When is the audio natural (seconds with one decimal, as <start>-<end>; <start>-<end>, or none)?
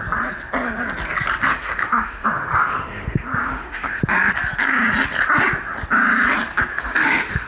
0.0-1.5; 4.0-6.7